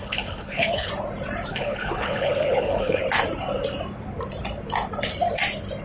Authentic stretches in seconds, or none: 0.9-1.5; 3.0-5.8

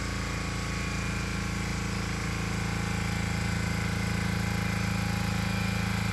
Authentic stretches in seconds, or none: 0.0-6.1

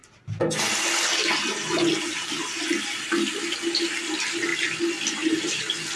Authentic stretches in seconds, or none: 0.0-6.0

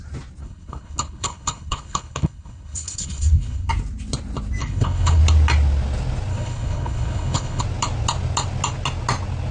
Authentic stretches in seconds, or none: 0.0-0.4; 3.7-4.6; 5.2-6.3; 7.6-9.5

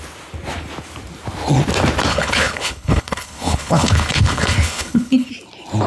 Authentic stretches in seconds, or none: 0.0-2.1; 5.3-5.9

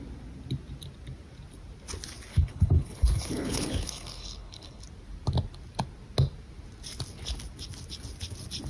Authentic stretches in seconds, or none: 0.0-2.3; 4.8-8.7

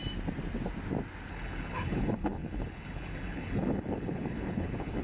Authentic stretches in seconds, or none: 0.0-1.3